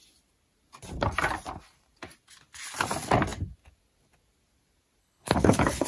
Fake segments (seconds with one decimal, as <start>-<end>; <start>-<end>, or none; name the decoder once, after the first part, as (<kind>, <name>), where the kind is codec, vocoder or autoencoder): 5.0-5.9 (codec, HILCodec)